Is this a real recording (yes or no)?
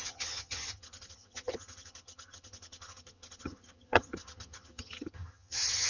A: no